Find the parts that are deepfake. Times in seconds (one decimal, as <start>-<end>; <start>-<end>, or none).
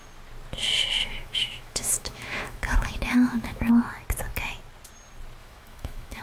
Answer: 1.0-3.7; 5.4-6.2